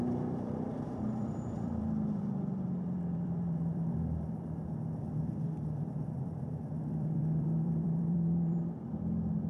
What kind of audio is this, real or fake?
fake